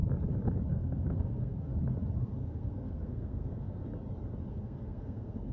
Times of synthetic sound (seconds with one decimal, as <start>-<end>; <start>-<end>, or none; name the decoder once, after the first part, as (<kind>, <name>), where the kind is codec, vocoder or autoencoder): 0.7-1.7 (codec, SNAC); 2.2-3.8; 4.5-5.5